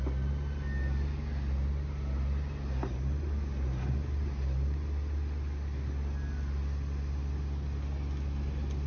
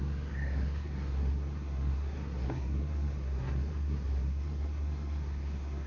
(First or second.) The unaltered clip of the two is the first